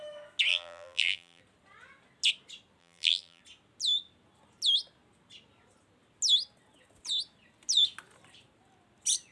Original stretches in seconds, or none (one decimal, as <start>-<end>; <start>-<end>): 0.0-0.5; 1.4-2.8; 3.4-9.3